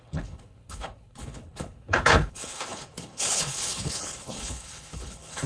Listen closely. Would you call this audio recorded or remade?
remade